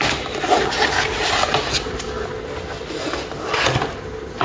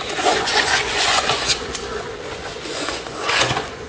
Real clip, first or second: first